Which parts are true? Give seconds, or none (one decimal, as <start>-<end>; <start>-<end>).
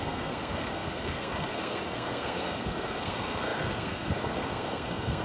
none